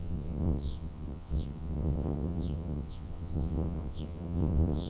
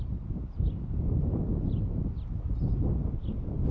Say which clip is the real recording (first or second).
second